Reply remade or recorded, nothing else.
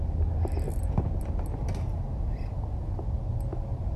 recorded